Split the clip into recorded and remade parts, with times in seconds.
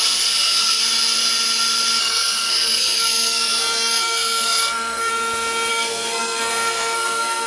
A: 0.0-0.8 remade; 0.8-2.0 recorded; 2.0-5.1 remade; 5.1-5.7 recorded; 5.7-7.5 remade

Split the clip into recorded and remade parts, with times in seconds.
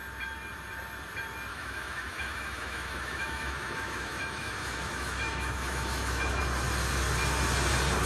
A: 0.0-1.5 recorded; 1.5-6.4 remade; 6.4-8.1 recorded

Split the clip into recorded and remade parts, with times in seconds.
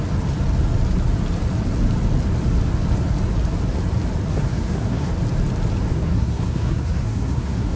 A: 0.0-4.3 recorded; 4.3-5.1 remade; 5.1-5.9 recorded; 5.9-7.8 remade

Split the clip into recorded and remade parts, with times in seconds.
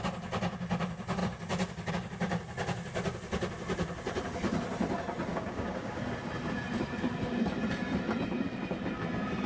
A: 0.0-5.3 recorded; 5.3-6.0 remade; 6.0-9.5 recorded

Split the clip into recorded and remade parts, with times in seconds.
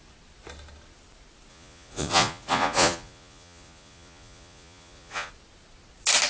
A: 0.0-1.5 recorded; 1.5-5.3 remade; 5.3-6.3 recorded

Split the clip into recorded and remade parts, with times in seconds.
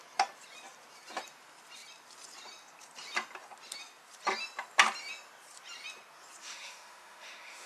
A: 0.0-6.4 recorded; 6.4-7.7 remade